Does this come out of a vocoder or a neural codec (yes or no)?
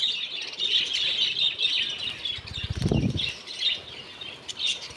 no